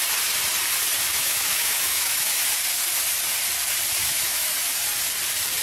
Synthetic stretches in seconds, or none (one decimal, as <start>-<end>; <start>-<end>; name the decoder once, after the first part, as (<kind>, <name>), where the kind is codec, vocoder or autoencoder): 1.1-2.5 (autoencoder, DAC-VAE); 4.0-4.5